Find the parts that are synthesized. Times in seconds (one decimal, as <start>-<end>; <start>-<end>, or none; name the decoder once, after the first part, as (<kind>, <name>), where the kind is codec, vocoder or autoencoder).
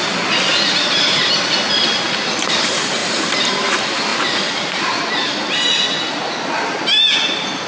0.5-1.4 (vocoder, BigVGAN v2); 3.0-3.5